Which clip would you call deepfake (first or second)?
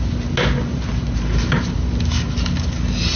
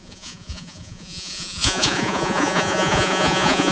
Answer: second